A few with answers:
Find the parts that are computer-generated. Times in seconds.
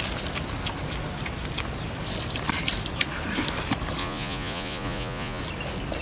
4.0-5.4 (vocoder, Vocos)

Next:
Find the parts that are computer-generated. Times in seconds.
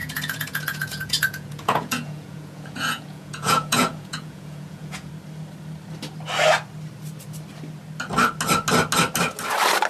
0.0-5.1 (vocoder, Vocos)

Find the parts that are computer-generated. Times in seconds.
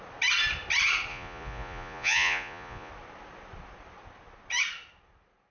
1.1-2.9 (vocoder, Vocos)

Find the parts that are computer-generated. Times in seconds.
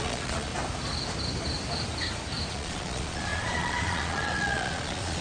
0.0-0.5 (vocoder, Vocos); 2.5-5.2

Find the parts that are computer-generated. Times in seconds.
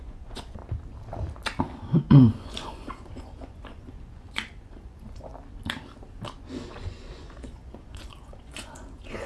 0.0-0.6 (vocoder, Vocos); 1.8-5.3; 6.7-9.3